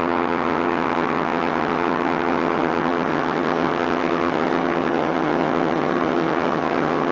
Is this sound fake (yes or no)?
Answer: yes